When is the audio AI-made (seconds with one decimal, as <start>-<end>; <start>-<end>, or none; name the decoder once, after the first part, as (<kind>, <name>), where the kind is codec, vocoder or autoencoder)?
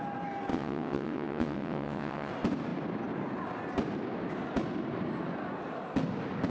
0.5-2.3 (vocoder, WaveNeXt)